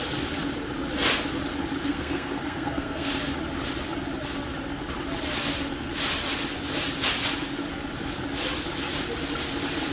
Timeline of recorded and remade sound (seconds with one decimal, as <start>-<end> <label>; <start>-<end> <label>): 0.0-1.9 recorded; 1.9-3.1 remade; 3.1-9.9 recorded

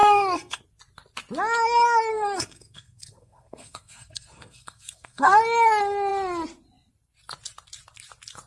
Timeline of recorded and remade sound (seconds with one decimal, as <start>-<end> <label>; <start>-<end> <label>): 0.0-0.6 remade; 0.6-2.1 recorded; 2.1-5.4 remade; 5.4-8.5 recorded

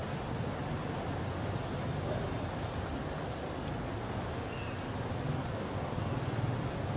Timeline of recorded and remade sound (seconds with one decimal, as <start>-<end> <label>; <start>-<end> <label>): 0.0-5.4 recorded; 5.4-6.0 remade; 6.0-7.0 recorded

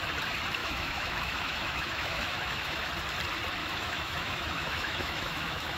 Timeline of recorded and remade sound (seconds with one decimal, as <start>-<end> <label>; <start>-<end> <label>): 0.0-0.6 recorded; 0.6-2.9 remade; 2.9-3.6 recorded; 3.6-5.8 remade

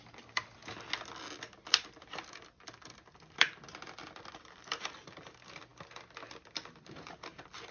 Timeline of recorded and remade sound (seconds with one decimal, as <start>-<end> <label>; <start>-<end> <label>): 0.0-0.6 remade; 0.6-2.4 recorded; 2.4-7.7 remade